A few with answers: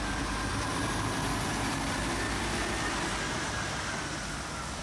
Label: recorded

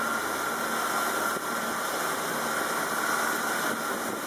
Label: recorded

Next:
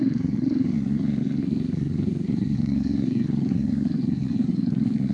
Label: remade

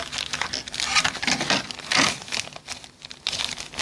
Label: recorded